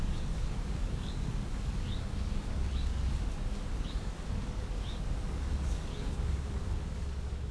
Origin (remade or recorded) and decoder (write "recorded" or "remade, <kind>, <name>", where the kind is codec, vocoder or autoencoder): remade, codec, DAC